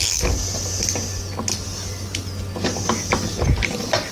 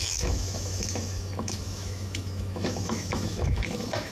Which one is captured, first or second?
first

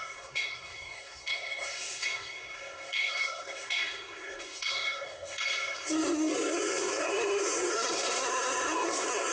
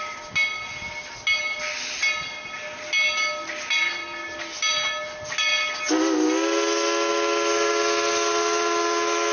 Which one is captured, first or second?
second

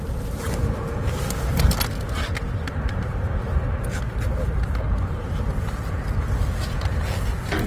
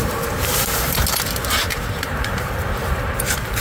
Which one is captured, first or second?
first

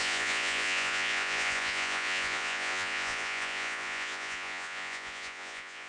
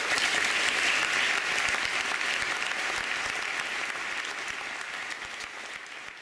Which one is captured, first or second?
second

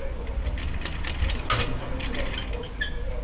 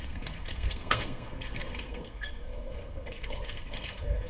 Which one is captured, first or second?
first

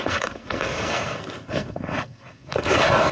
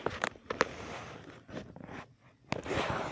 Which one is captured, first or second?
second